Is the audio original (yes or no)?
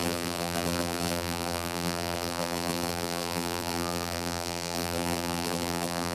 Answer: no